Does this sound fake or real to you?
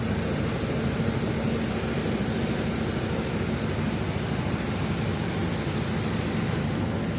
real